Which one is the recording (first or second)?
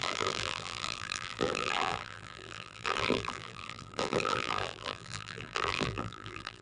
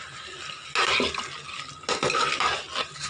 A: second